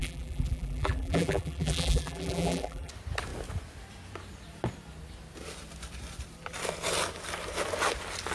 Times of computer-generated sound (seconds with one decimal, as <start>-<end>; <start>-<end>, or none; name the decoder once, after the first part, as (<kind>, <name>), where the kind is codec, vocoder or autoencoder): 0.0-2.9 (vocoder, BigVGAN v2)